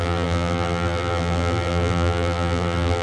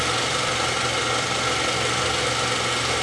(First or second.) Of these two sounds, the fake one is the first